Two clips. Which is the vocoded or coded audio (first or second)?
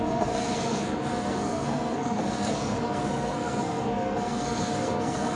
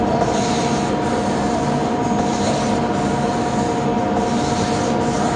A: first